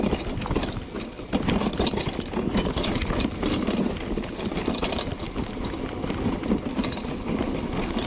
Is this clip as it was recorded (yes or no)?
yes